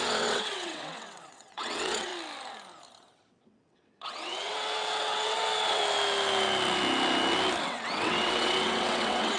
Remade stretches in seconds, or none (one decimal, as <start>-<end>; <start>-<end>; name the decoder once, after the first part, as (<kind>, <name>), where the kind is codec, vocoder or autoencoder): 0.0-2.1 (vocoder, WaveNeXt); 3.3-5.8; 7.6-9.4